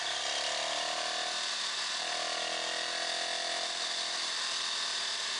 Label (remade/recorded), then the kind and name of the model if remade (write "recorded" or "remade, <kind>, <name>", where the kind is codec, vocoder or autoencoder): recorded